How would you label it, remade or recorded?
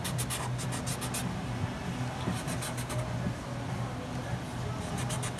recorded